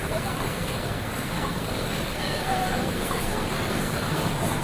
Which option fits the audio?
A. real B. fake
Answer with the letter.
B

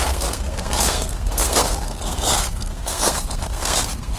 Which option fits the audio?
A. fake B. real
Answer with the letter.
A